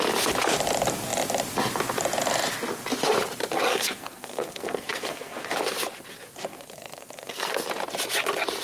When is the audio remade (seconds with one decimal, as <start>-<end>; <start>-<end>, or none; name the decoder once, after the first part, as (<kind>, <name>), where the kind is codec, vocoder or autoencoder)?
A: 3.7-5.5 (codec, SNAC); 6.5-7.5